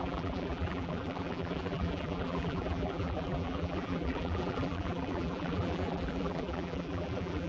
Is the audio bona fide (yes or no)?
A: no